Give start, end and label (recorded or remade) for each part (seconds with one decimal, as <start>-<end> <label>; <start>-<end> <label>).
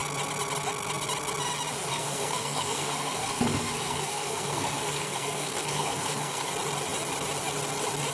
0.0-1.9 recorded; 1.9-6.5 remade; 6.5-8.1 recorded